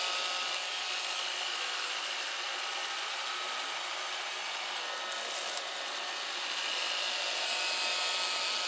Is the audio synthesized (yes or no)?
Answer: no